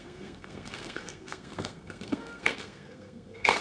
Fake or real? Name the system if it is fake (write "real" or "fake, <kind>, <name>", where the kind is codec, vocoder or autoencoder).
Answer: fake, codec, SNAC